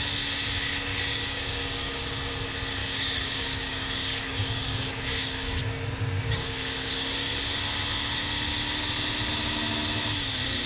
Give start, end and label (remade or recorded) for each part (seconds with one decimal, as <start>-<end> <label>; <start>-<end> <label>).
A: 0.0-0.9 recorded; 0.9-2.0 remade; 2.0-2.8 recorded; 2.8-7.3 remade; 7.3-10.7 recorded